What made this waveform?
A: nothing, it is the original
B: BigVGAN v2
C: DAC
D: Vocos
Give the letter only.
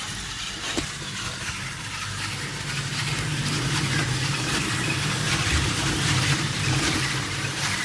B